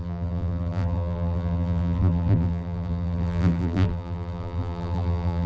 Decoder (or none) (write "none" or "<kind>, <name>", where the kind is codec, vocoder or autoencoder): vocoder, BigVGAN v2